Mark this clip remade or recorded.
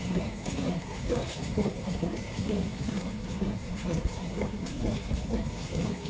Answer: remade